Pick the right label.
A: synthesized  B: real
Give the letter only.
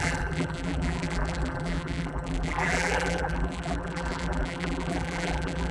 A